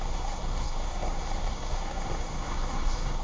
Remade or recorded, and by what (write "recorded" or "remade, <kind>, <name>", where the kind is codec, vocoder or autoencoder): remade, codec, SNAC